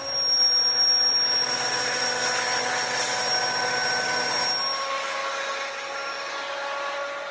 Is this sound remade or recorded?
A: recorded